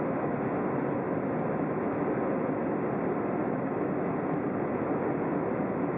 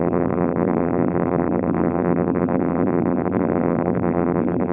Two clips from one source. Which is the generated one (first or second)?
second